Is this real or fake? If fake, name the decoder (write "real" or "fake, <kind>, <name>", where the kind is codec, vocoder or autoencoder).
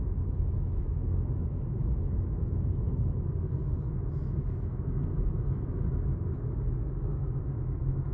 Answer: fake, autoencoder, DAC-VAE